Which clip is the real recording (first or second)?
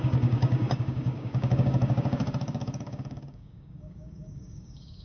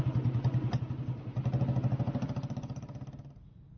second